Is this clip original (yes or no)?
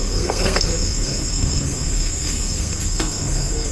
no